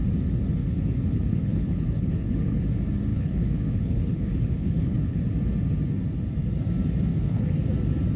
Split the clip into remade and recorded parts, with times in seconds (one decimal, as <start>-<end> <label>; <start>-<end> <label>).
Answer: 0.0-0.6 recorded; 0.6-2.6 remade; 2.6-3.1 recorded; 3.1-5.2 remade; 5.2-7.1 recorded; 7.1-7.6 remade; 7.6-8.2 recorded